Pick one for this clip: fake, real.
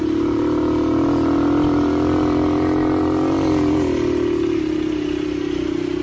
real